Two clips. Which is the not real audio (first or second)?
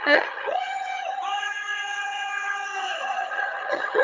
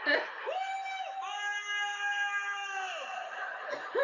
first